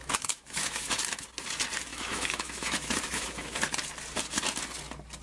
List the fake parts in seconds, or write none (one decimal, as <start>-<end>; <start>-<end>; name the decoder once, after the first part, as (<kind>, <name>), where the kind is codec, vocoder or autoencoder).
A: 0.0-0.9 (autoencoder, DAC-VAE); 1.9-3.6